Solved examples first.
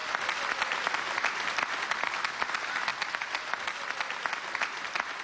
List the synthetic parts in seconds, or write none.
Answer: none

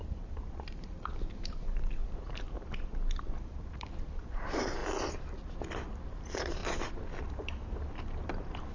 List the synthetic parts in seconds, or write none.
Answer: 0.0-2.0; 3.4-4.8; 6.1-6.6; 7.2-8.7

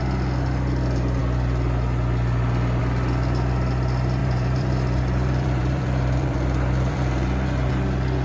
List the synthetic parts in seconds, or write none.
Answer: 4.2-7.7

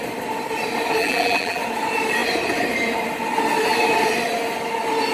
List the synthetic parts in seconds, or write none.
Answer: 1.0-1.6

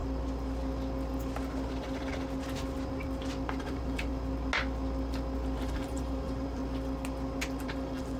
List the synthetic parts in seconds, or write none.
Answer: 3.6-4.1; 5.6-6.6; 7.6-8.2

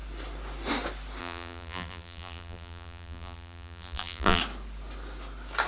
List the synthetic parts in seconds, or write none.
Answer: 1.2-4.4